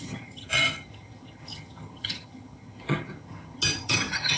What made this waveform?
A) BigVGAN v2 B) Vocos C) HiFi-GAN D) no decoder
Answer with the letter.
C